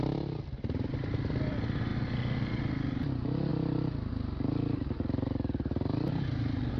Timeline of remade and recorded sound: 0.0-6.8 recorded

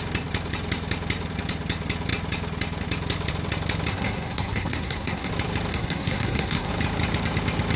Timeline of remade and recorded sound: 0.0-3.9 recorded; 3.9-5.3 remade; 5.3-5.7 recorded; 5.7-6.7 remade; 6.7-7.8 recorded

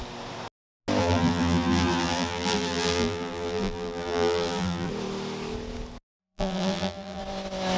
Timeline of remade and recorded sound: 0.0-1.0 recorded; 1.0-4.9 remade; 4.9-6.2 recorded; 6.2-7.2 remade; 7.2-7.8 recorded

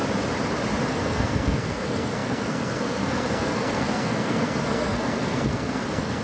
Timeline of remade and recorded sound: 0.0-0.9 recorded; 0.9-6.2 remade

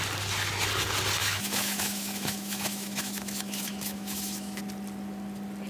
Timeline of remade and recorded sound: 0.0-1.2 recorded; 1.2-4.6 remade; 4.6-5.7 recorded

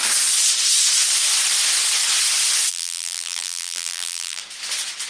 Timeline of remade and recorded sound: 0.0-2.7 recorded; 2.7-4.4 remade; 4.4-5.1 recorded